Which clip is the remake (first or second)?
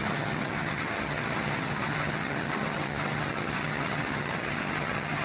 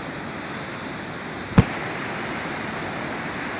first